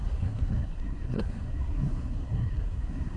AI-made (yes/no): yes